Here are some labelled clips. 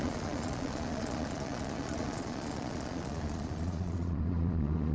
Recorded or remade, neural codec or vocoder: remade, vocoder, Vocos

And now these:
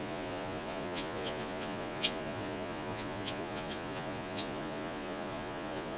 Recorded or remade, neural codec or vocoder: remade, vocoder, Vocos